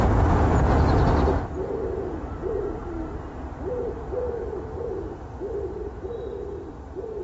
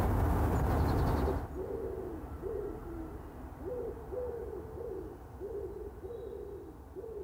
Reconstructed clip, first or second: first